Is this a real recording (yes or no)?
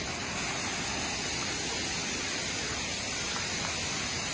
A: yes